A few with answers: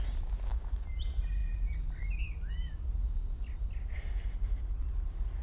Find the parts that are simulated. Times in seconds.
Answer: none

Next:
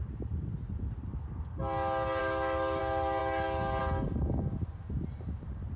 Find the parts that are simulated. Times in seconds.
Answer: 2.2-2.8 (autoencoder, DAC-VAE)

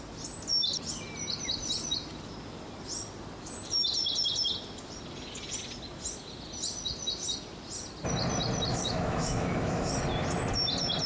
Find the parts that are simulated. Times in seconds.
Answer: 8.7-9.9 (autoencoder, DAC-VAE)

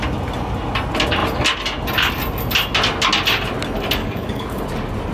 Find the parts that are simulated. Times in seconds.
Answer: 4.0-4.6 (codec, DAC)

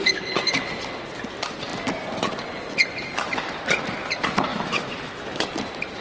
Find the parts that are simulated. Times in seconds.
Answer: 4.5-5.5 (autoencoder, DAC-VAE)

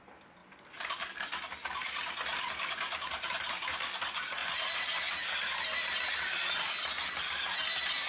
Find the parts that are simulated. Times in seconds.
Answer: none

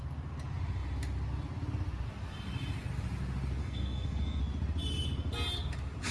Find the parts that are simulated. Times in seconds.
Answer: 3.6-4.4 (codec, SNAC)